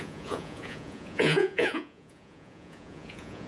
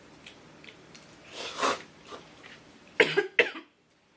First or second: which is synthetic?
first